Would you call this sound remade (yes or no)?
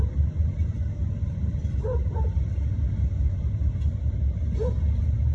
yes